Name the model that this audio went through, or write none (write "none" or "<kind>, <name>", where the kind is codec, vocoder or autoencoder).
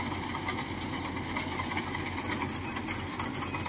none